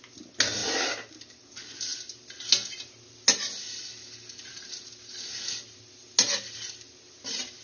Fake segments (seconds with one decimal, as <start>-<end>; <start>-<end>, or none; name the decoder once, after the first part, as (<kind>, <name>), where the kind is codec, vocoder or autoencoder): none